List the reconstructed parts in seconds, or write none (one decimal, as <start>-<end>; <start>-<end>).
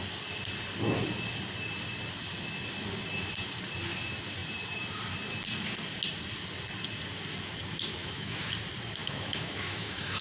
8.0-8.5; 9.0-10.2